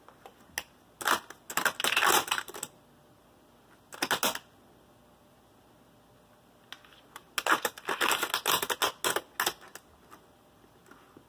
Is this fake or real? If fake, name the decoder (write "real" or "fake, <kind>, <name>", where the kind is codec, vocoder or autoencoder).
real